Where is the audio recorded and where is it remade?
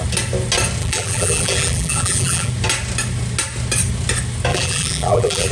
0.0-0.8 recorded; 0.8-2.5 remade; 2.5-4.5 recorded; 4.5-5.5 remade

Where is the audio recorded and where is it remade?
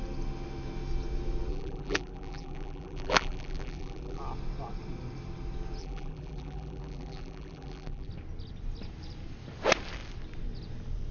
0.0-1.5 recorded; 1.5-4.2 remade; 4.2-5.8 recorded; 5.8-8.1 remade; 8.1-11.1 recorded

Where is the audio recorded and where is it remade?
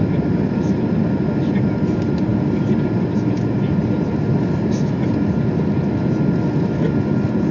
0.0-7.5 recorded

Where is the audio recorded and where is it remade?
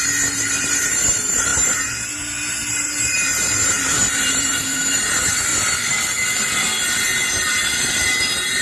0.0-5.5 remade; 5.5-7.3 recorded; 7.3-8.6 remade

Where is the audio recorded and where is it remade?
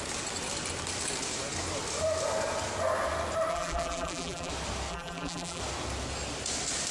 0.0-3.5 recorded; 3.5-4.5 remade; 4.5-4.9 recorded; 4.9-5.6 remade; 5.6-6.9 recorded